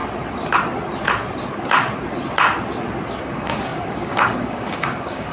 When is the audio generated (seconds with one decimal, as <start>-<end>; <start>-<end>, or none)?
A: 3.2-5.3